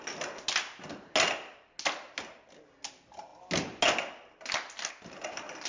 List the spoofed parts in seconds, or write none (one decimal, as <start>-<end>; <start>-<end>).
none